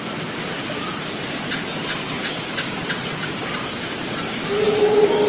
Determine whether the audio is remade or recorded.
recorded